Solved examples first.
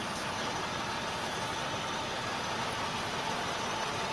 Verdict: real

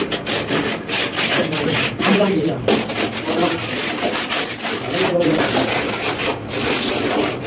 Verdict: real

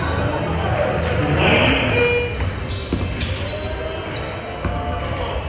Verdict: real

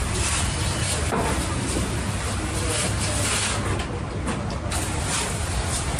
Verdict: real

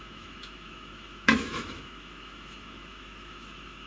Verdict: fake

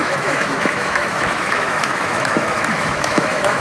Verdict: fake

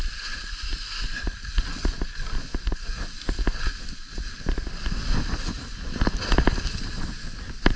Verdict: real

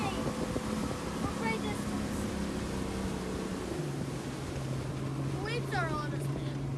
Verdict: real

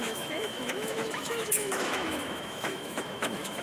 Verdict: fake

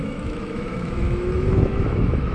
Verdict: fake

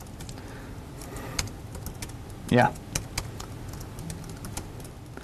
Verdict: real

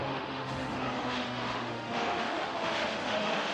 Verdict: fake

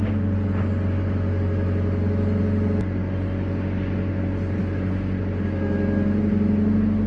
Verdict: real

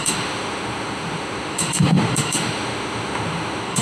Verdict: fake